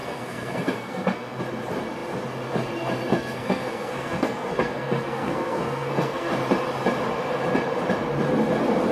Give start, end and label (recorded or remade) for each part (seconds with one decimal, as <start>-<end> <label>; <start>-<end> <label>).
0.0-1.4 remade; 1.4-3.1 recorded; 3.1-6.3 remade; 6.3-8.9 recorded